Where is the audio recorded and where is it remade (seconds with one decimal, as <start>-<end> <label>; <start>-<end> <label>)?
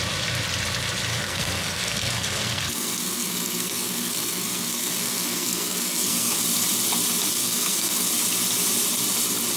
0.0-1.1 recorded; 1.1-6.4 remade; 6.4-7.4 recorded; 7.4-8.1 remade; 8.1-9.6 recorded